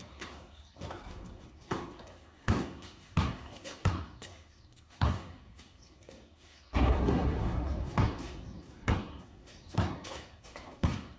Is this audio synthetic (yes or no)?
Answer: yes